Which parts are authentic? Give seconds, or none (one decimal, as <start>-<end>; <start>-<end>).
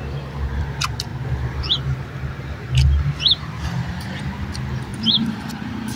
0.6-4.9